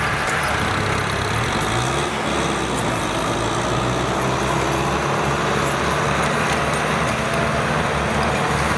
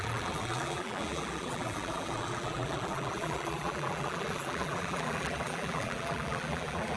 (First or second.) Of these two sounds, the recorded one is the first